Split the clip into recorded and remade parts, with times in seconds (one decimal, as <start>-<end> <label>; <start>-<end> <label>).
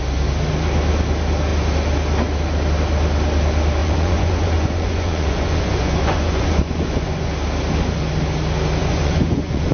0.0-3.8 recorded; 3.8-7.3 remade; 7.3-8.8 recorded; 8.8-9.7 remade